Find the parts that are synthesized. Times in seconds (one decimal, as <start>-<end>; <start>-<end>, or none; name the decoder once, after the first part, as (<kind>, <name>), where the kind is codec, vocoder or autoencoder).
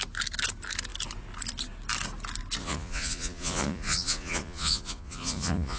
2.6-5.8 (vocoder, Vocos)